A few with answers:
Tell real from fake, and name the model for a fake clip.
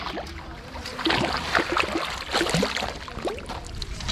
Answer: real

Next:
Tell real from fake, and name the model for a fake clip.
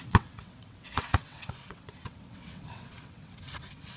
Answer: fake, vocoder, WaveNeXt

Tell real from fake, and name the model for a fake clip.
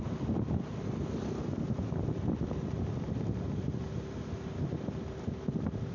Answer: real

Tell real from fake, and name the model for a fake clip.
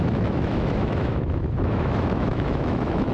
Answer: fake, autoencoder, DAC-VAE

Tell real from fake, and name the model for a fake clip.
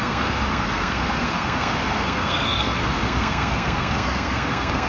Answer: fake, codec, SNAC